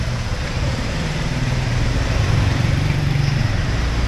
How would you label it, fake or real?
fake